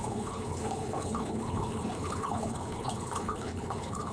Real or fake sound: fake